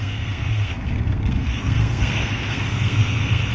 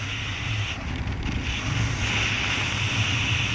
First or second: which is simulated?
first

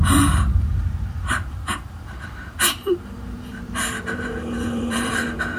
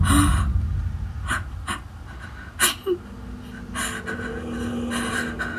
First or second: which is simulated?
first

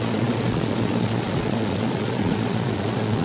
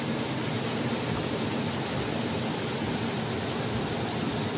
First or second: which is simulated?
first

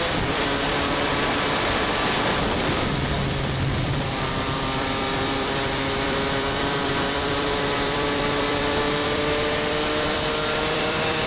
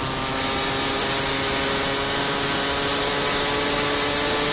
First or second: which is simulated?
first